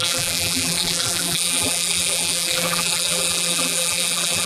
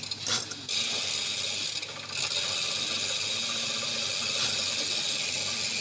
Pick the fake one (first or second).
first